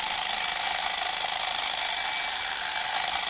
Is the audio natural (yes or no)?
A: yes